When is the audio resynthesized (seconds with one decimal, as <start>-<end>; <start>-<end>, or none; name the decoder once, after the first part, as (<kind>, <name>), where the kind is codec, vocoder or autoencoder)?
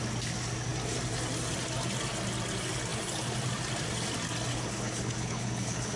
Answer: 4.5-6.0 (codec, HILCodec)